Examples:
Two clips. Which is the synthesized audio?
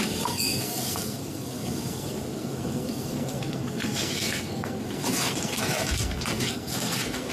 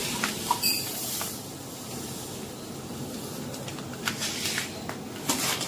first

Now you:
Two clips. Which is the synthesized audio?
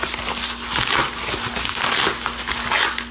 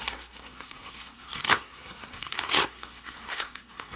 second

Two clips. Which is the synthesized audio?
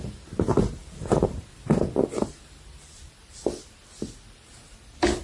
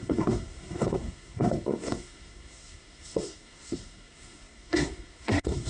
second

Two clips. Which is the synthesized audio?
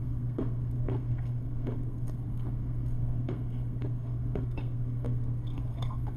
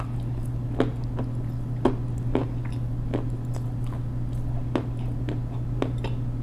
first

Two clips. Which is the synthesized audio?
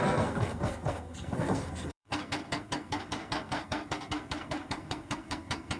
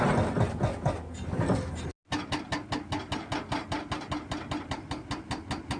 first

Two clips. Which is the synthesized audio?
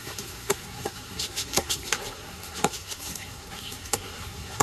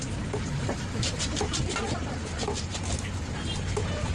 first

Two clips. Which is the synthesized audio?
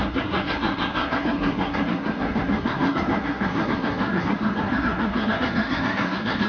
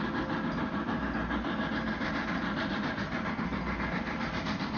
first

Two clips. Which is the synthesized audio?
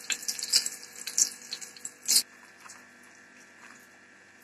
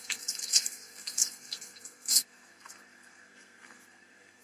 second